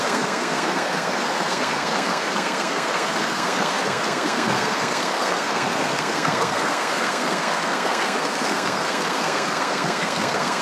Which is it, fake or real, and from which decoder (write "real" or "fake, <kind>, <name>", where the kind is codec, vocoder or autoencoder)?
fake, codec, SNAC